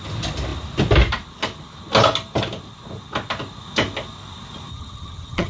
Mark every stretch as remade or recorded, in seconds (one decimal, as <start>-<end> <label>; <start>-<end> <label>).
0.0-4.7 recorded; 4.7-5.5 remade